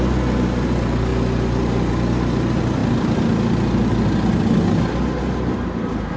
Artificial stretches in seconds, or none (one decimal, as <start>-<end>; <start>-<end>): none